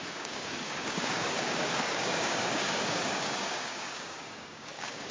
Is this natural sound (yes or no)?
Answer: no